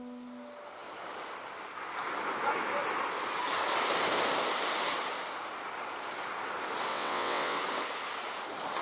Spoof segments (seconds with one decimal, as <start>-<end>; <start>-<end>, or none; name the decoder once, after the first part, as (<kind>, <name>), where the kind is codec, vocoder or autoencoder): 6.9-7.6 (vocoder, WaveNeXt)